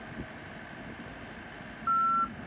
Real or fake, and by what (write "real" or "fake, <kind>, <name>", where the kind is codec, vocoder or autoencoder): real